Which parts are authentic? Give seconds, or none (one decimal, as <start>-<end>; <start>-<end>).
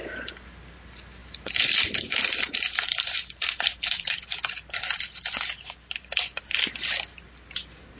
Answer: 0.0-1.2; 4.7-8.0